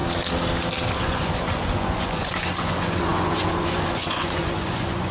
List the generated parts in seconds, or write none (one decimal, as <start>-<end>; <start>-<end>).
1.0-5.1